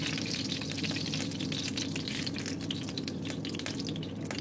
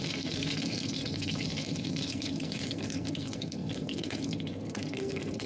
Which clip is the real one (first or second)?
first